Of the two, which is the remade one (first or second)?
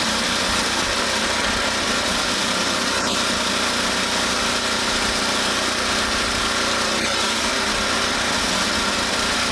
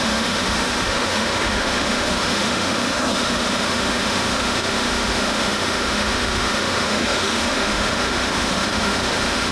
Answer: second